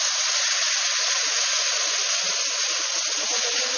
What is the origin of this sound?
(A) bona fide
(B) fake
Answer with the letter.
A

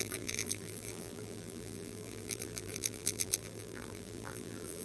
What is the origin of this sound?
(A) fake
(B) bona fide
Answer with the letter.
A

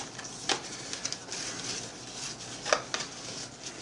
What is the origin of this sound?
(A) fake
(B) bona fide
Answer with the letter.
B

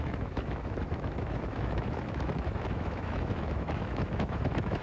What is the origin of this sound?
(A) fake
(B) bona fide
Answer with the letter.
A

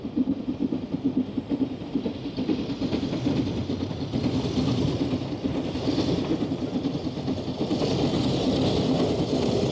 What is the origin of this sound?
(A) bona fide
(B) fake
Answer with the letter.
A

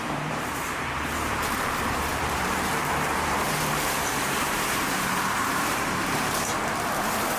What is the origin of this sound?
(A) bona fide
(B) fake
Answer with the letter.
B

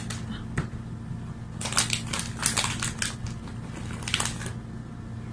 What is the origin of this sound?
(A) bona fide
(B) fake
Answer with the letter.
A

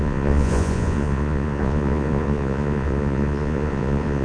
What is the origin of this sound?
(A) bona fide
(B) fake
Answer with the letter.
B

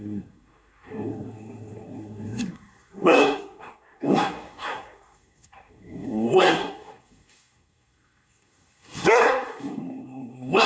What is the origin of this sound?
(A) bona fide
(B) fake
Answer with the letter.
B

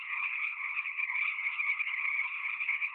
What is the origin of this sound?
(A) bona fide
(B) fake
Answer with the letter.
B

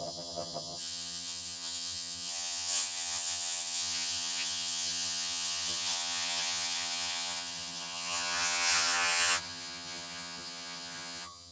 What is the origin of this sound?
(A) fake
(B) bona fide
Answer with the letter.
A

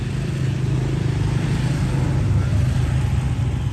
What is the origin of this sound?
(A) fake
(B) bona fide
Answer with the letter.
B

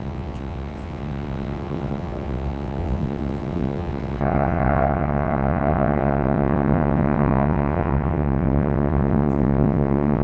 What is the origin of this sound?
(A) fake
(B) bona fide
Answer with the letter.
A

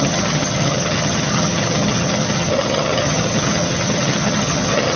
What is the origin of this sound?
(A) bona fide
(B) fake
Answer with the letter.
B